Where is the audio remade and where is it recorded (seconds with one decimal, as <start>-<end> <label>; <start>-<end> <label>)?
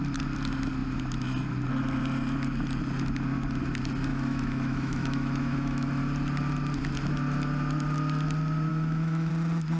0.0-4.1 recorded; 4.1-6.0 remade; 6.0-8.7 recorded; 8.7-9.3 remade; 9.3-9.8 recorded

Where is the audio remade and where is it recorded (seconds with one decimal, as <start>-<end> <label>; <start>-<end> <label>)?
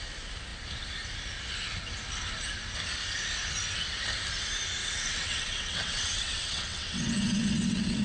0.0-4.8 recorded; 4.8-8.0 remade